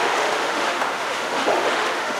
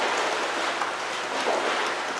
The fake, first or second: first